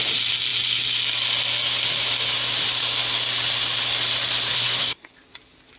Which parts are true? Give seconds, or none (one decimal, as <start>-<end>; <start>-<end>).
0.0-4.5; 5.1-5.8